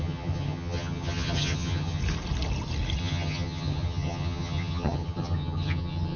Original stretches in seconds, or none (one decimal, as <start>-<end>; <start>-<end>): 2.0-3.0

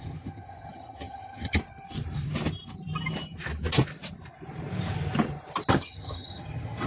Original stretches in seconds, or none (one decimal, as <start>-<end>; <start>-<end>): 1.6-5.7

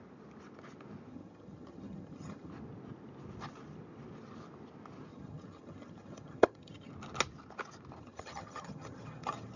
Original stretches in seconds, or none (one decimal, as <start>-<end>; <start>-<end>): 0.0-1.1; 2.5-5.1; 6.9-8.0

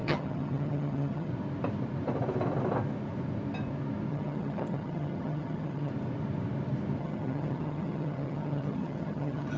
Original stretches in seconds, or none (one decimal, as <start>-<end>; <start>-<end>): 1.3-4.1; 5.9-7.0

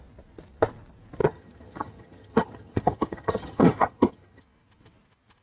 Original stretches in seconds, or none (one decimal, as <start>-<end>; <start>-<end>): 0.0-1.2; 4.4-5.4